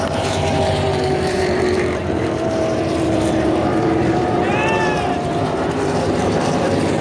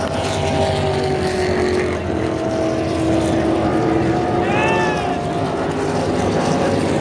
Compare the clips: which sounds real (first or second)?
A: second